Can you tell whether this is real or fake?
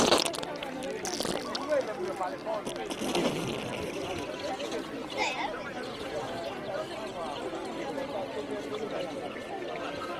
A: real